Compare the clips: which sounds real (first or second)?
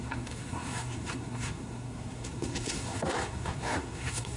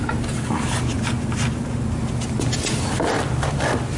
second